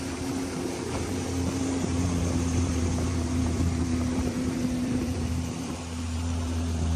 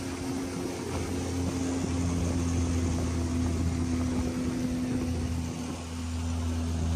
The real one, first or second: second